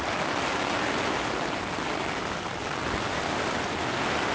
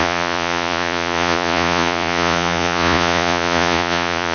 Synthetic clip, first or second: second